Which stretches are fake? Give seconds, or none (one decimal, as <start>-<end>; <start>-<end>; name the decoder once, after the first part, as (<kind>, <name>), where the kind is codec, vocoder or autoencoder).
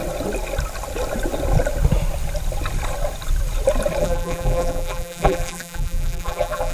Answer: 4.0-6.7 (vocoder, BigVGAN v2)